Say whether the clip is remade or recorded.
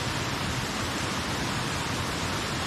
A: recorded